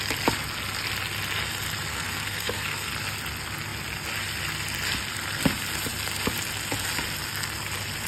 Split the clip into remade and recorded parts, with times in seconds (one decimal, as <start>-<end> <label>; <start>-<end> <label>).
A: 0.0-1.9 recorded; 1.9-2.9 remade; 2.9-8.1 recorded